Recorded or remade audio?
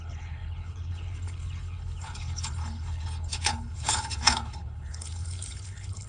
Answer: remade